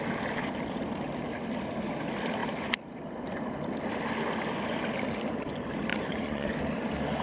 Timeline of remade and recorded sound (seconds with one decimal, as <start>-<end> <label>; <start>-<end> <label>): 0.0-5.9 recorded; 5.9-6.5 remade; 6.5-7.2 recorded